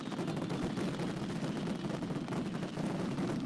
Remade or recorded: recorded